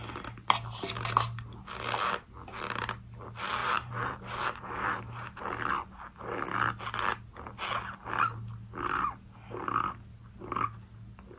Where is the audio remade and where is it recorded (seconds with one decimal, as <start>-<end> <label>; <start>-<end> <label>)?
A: 0.0-3.6 recorded; 3.6-5.4 remade; 5.4-11.4 recorded